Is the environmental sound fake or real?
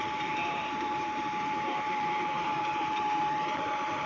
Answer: fake